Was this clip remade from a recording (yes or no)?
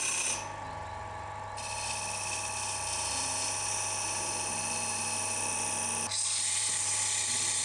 no